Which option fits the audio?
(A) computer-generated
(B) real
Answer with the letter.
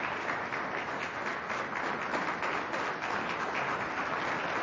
B